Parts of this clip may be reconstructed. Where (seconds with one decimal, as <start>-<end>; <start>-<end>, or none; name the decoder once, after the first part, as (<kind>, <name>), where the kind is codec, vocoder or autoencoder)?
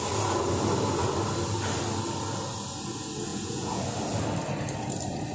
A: 3.3-3.8 (vocoder, Vocos)